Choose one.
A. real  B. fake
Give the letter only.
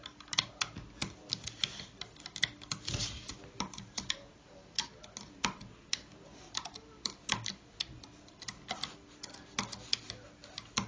A